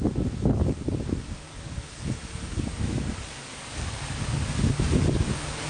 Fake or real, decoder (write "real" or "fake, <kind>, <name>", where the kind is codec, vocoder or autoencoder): fake, codec, DAC